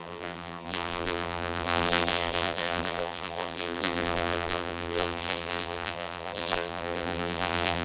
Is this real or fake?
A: fake